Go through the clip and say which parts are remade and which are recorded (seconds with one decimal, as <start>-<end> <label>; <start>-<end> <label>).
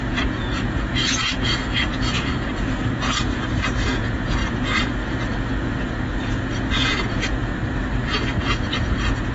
0.0-7.5 remade; 7.5-8.4 recorded; 8.4-9.3 remade